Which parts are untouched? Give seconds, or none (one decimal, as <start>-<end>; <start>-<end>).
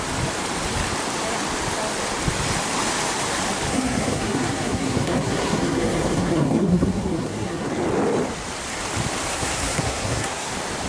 0.0-3.7; 7.7-9.3; 10.5-10.9